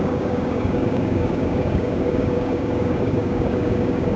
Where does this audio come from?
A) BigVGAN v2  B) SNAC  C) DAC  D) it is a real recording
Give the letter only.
C